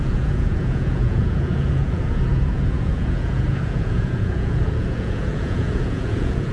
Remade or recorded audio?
remade